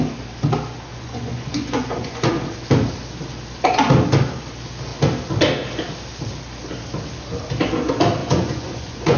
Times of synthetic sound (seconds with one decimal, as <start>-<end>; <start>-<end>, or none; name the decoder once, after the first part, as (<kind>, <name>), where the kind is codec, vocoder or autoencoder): 0.9-2.3 (vocoder, Vocos); 8.2-9.2